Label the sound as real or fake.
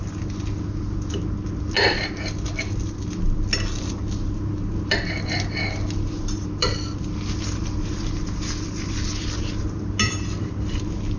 real